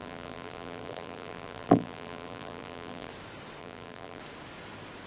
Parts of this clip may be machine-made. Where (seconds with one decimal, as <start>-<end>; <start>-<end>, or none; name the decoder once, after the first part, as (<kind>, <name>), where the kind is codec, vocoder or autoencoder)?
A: 0.0-3.1 (vocoder, BigVGAN v2); 3.6-4.2